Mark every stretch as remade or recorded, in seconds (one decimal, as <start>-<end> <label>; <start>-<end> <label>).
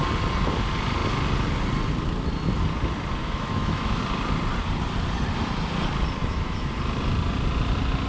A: 0.0-3.2 recorded; 3.2-4.0 remade; 4.0-6.2 recorded; 6.2-6.7 remade; 6.7-8.1 recorded